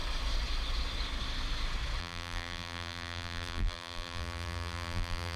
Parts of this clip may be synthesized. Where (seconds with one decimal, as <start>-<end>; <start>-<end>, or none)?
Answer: 2.0-5.4